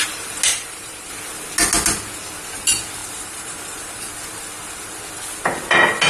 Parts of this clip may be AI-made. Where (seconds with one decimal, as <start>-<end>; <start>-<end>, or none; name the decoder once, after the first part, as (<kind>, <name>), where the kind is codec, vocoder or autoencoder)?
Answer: 0.5-1.1 (vocoder, BigVGAN v2); 3.0-4.1